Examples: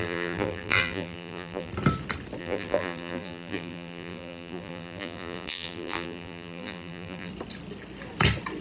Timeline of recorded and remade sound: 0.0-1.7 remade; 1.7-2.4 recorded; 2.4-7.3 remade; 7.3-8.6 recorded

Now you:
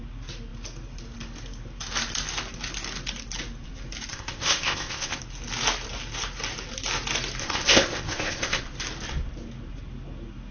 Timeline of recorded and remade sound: 0.0-4.1 recorded; 4.1-5.2 remade; 5.2-7.4 recorded; 7.4-8.6 remade; 8.6-10.5 recorded

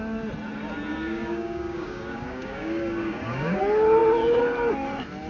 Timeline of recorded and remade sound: 0.0-0.9 recorded; 0.9-3.6 remade; 3.6-5.3 recorded

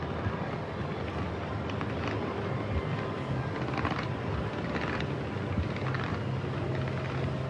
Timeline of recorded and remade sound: 0.0-7.5 recorded